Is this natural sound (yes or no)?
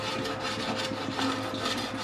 yes